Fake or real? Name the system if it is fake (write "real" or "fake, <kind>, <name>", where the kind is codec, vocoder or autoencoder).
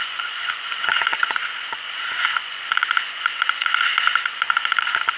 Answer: fake, vocoder, Vocos